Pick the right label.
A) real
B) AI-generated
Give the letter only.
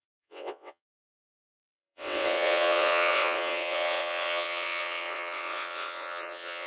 B